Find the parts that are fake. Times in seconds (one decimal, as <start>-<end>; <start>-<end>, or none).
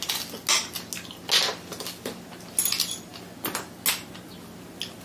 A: none